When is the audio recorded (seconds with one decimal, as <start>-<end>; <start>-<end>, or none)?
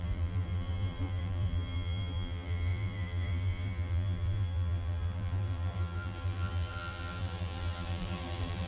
none